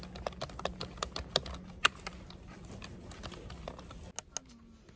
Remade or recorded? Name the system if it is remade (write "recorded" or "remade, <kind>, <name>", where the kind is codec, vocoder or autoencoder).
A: recorded